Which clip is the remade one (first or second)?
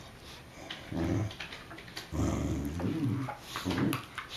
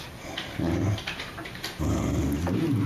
second